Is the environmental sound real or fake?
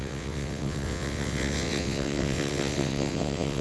fake